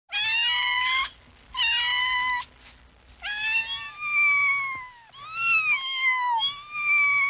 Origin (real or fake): real